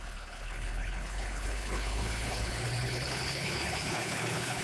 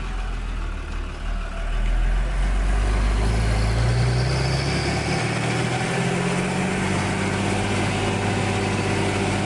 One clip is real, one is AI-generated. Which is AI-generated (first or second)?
first